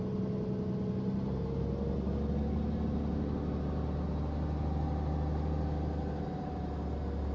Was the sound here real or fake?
real